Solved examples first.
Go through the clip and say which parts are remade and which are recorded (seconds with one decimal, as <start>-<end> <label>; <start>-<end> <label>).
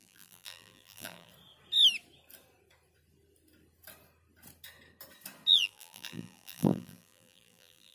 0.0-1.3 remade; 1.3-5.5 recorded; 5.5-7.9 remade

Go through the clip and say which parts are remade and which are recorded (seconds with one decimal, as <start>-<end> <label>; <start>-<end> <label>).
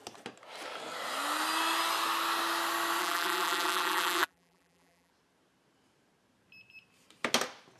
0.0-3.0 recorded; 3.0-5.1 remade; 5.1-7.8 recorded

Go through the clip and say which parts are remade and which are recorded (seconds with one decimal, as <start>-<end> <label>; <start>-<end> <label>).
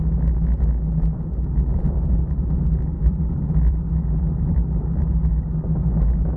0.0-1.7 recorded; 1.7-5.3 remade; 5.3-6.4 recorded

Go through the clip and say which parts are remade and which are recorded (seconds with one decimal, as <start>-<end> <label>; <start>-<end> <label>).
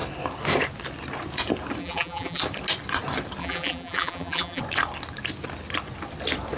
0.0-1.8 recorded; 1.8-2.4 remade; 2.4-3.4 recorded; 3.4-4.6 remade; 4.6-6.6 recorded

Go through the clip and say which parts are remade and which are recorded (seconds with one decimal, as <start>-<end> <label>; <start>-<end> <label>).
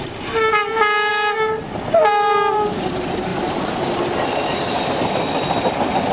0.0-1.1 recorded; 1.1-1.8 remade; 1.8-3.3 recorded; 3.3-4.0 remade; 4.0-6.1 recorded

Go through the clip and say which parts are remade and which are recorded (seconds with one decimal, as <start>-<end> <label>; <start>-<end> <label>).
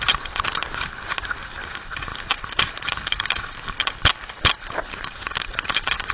0.0-6.1 recorded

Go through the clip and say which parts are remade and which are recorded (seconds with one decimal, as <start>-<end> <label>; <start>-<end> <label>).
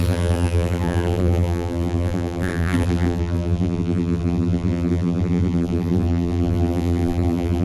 0.0-7.6 remade